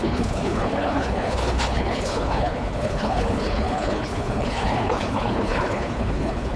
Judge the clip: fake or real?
fake